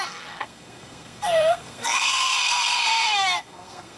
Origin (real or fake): fake